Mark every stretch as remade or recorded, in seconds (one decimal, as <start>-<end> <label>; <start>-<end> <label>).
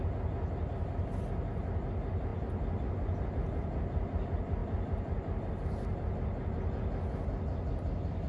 0.0-8.3 recorded